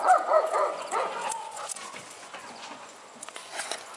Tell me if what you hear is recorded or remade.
remade